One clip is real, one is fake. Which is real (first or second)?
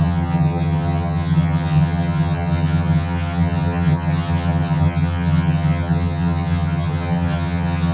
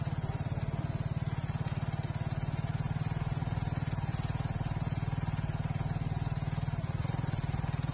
second